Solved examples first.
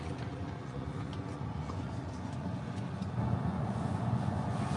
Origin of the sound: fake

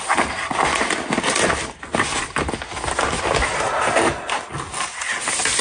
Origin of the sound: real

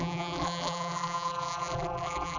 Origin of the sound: fake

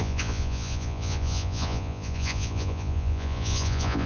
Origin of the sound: fake